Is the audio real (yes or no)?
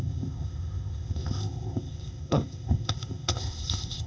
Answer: no